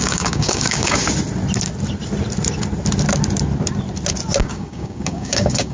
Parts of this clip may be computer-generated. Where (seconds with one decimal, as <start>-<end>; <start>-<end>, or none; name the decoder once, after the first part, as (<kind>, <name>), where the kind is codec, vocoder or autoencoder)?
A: 0.0-1.0 (codec, DAC); 4.4-5.7